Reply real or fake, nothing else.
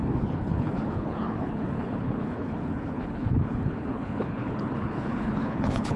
fake